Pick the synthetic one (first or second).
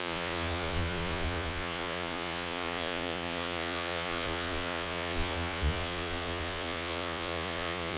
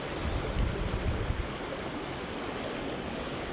first